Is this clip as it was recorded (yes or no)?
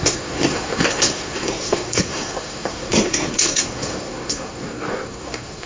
no